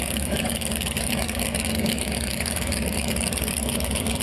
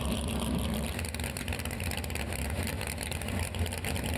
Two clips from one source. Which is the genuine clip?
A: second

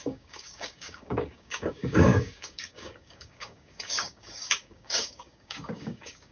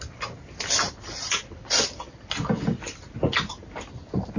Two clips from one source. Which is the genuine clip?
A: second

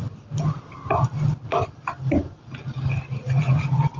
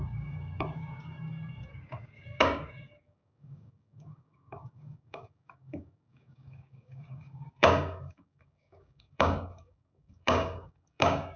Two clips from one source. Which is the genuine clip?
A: first